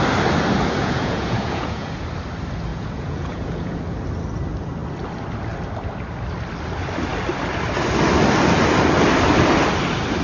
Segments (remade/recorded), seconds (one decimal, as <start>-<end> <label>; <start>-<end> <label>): 0.0-0.8 recorded; 0.8-2.0 remade; 2.0-2.7 recorded; 2.7-3.8 remade; 3.8-10.2 recorded